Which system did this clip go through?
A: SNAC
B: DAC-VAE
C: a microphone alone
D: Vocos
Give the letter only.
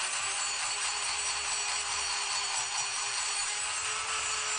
C